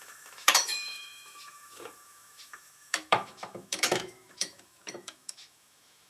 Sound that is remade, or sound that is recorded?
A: remade